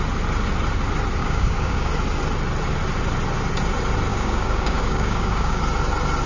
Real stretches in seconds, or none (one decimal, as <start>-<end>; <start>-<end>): 0.0-1.2; 1.9-4.1; 5.6-6.3